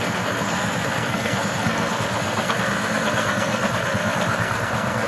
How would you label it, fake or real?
fake